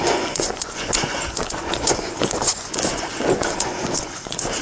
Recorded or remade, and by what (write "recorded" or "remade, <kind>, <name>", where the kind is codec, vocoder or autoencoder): remade, vocoder, Vocos